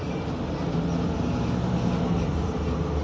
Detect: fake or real real